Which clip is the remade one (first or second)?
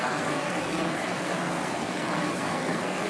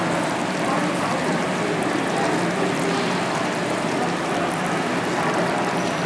first